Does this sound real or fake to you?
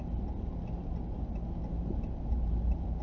real